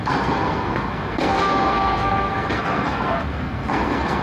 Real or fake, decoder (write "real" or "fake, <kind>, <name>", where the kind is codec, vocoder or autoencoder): fake, codec, SNAC